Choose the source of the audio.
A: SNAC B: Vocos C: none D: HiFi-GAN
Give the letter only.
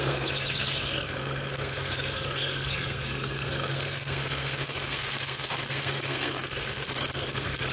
A